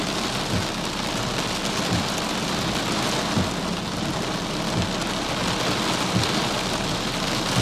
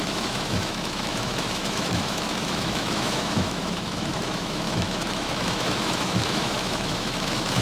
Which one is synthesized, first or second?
second